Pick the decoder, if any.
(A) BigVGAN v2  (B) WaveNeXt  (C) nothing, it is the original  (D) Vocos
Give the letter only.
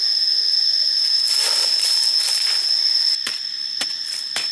C